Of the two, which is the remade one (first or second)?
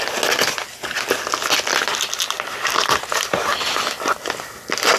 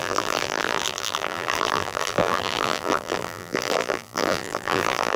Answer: second